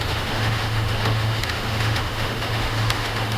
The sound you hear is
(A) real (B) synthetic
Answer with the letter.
B